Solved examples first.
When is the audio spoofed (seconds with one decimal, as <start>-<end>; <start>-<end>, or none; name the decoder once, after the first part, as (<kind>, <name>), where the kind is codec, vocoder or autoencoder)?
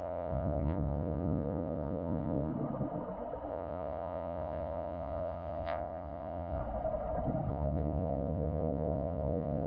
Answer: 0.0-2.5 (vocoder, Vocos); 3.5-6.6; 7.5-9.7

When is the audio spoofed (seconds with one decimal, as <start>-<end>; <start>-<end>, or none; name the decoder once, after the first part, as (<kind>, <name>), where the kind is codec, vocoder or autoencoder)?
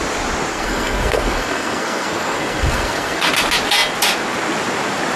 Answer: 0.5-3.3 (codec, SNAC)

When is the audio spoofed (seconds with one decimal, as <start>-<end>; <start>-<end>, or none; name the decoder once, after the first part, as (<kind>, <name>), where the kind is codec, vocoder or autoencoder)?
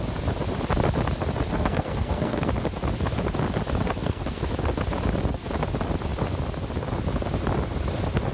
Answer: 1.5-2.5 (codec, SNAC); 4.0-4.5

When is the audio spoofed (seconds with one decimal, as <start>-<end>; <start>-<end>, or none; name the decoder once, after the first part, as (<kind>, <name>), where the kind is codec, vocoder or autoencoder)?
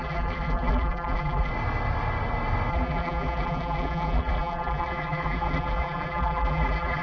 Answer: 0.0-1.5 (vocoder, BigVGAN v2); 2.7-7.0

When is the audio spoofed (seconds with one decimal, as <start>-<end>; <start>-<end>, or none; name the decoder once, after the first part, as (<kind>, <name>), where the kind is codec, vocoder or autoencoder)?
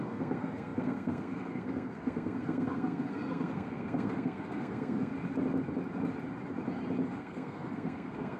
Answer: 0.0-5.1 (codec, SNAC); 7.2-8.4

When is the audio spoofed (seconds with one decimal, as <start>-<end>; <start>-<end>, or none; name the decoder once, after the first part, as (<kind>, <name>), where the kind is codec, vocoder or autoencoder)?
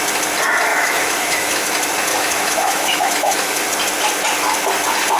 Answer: 0.7-1.7 (autoencoder, DAC-VAE); 2.1-3.6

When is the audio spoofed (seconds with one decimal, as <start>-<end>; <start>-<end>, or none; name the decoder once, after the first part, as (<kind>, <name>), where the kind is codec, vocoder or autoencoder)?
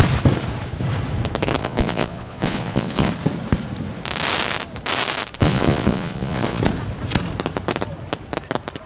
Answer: 1.6-3.1 (vocoder, Vocos); 5.4-6.6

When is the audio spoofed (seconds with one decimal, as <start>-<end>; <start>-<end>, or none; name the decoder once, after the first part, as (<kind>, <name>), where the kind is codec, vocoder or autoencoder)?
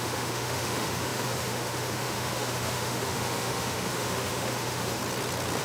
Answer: 0.0-5.0 (autoencoder, DAC-VAE)